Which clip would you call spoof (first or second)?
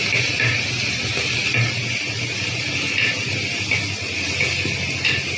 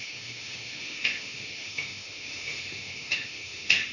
second